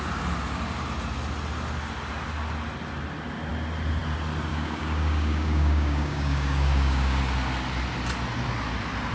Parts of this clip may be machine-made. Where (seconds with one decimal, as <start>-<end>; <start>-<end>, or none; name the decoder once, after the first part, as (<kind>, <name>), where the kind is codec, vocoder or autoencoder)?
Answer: 4.5-7.2 (codec, DAC)